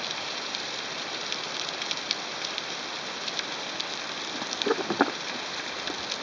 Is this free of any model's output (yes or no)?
no